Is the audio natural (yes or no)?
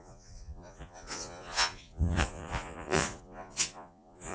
no